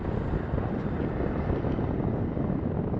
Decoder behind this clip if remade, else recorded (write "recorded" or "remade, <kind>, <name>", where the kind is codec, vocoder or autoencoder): recorded